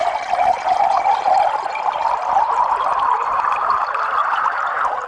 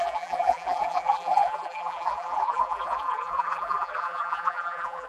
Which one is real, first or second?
first